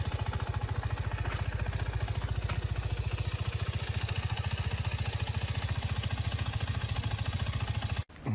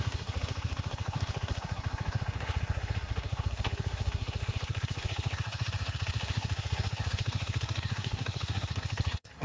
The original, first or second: first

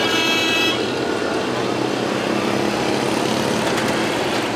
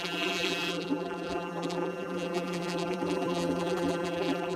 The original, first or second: first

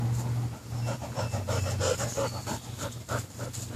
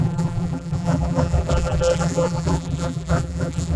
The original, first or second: first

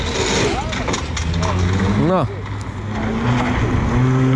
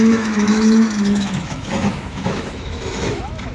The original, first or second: first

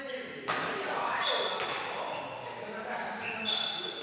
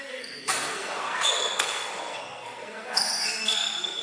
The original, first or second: first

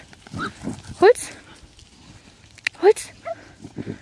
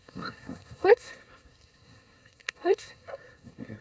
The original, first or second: first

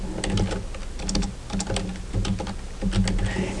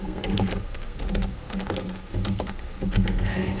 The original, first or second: first